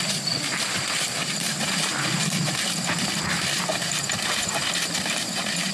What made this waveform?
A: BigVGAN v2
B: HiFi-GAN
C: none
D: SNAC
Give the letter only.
A